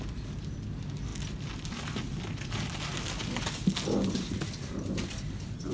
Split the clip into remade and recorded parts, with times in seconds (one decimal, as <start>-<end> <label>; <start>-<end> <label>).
0.0-5.7 recorded